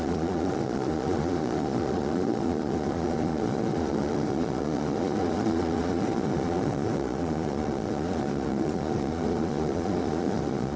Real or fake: fake